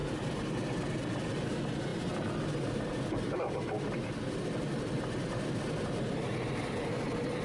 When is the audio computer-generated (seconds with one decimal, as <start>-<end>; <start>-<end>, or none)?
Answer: none